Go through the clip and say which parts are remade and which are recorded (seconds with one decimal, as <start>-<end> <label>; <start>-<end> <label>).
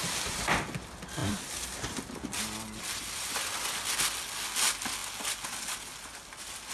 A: 0.0-6.7 recorded